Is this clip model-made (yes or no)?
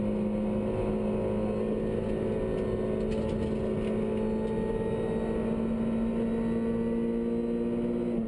no